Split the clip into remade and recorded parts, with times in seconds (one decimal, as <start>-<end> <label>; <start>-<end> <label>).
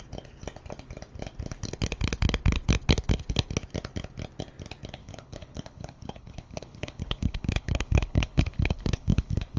0.0-5.0 recorded; 5.0-9.6 remade